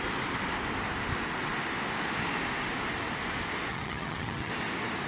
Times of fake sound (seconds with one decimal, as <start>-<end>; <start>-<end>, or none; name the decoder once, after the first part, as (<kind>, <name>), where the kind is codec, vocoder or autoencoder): 3.7-4.5 (vocoder, HiFi-GAN)